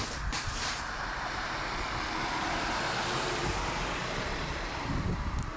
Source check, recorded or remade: remade